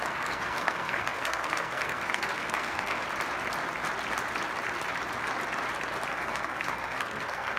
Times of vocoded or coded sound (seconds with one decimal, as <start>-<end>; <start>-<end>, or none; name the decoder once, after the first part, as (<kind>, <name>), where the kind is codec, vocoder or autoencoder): 0.0-3.0 (codec, SNAC); 6.1-7.6